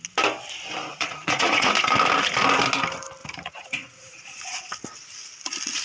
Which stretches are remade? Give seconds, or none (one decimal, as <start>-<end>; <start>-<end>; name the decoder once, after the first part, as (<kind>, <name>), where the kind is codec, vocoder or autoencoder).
0.9-1.7 (vocoder, Vocos); 3.2-4.7